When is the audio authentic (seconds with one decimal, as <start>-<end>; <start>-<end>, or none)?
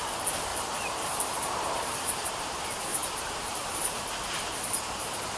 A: 0.0-0.5; 2.3-2.9; 4.0-5.4